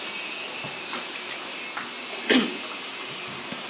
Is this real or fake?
real